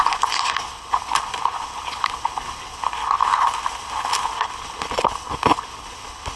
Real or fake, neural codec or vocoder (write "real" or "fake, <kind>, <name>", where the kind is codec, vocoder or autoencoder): fake, codec, HILCodec